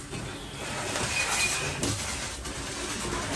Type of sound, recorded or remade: recorded